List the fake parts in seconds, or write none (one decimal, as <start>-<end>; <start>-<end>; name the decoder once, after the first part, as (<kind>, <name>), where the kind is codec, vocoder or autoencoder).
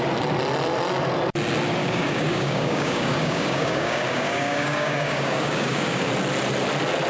1.8-6.1 (codec, DAC)